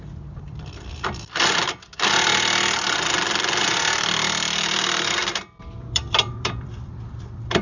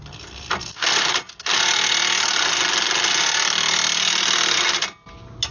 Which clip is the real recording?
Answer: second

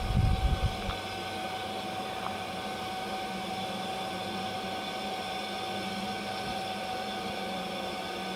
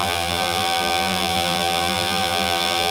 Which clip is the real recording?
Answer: first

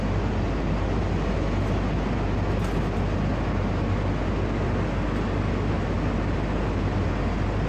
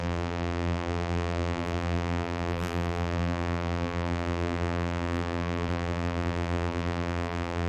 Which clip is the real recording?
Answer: first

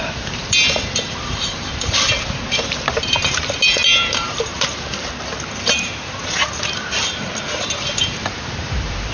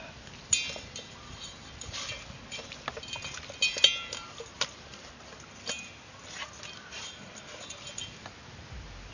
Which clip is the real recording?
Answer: second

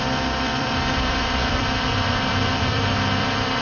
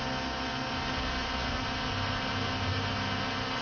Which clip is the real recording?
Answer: second